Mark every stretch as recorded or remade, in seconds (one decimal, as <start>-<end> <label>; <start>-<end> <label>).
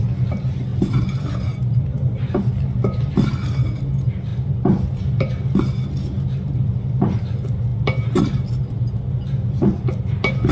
0.0-10.5 recorded